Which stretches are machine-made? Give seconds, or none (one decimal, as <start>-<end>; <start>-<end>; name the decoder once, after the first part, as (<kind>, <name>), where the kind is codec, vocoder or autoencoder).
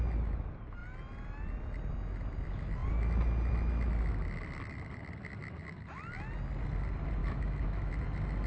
7.2-8.0 (autoencoder, DAC-VAE)